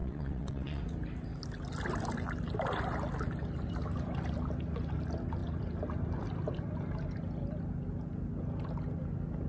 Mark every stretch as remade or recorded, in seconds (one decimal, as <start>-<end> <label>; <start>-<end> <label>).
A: 0.0-0.8 remade; 0.8-9.5 recorded